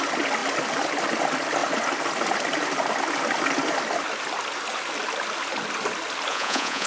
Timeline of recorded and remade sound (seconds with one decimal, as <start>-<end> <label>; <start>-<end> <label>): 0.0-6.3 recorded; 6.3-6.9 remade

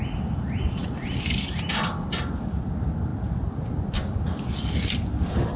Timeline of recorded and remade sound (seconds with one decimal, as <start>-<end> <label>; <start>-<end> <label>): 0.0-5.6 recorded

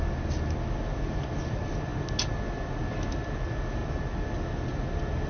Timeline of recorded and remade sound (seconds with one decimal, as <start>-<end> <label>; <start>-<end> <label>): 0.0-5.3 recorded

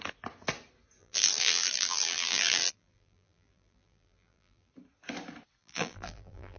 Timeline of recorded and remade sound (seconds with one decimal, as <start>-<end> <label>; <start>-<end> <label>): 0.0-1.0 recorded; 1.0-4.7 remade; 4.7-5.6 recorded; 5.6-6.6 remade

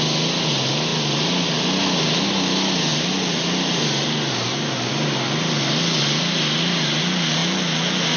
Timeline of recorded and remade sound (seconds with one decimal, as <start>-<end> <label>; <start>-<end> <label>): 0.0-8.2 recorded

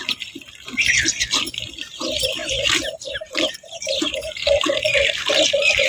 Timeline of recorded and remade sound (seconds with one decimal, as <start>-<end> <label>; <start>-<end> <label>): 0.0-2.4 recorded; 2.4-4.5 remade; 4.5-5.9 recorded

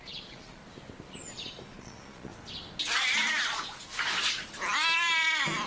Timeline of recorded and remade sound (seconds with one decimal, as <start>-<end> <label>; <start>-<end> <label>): 0.0-0.6 remade; 0.6-1.8 recorded; 1.8-2.3 remade; 2.3-5.7 recorded

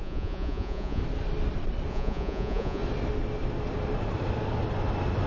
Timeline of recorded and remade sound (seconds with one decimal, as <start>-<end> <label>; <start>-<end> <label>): 0.0-1.0 remade; 1.0-1.9 recorded; 1.9-2.8 remade; 2.8-5.3 recorded